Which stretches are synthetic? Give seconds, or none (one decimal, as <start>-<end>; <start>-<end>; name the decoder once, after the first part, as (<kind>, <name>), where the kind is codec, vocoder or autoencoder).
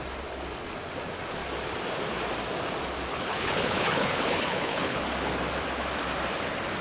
3.1-5.0 (codec, HILCodec)